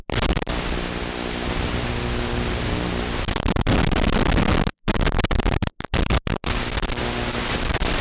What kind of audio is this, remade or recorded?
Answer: recorded